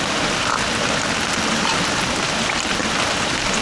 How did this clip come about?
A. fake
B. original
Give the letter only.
B